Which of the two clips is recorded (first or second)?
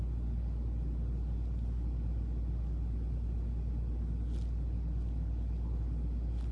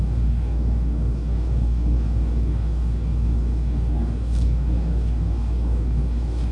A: first